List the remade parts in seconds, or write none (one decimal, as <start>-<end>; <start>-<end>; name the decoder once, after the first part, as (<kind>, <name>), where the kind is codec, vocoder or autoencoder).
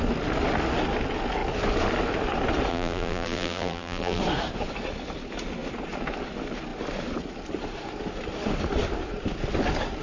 2.7-4.2 (vocoder, BigVGAN v2)